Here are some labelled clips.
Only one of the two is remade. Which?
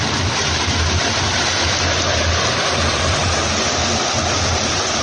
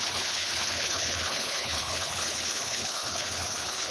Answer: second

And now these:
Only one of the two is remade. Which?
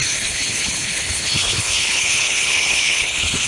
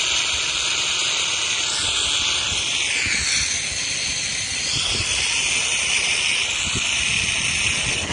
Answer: first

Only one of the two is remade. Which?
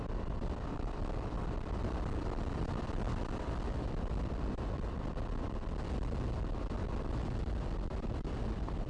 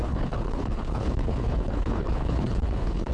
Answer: second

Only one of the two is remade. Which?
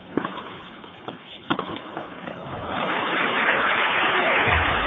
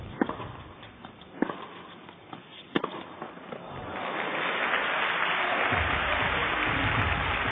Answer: first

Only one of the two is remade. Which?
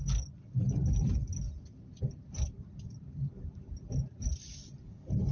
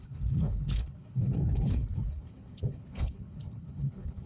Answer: second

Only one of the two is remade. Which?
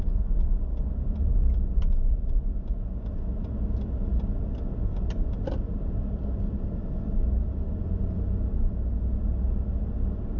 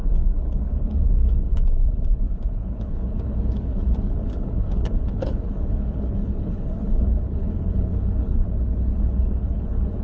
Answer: second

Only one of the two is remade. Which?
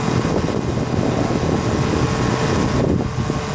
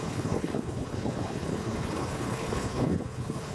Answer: second